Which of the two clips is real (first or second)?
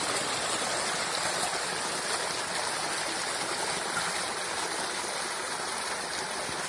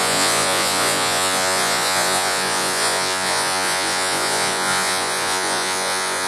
first